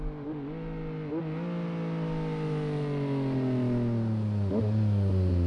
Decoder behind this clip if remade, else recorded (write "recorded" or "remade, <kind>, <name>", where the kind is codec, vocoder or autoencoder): recorded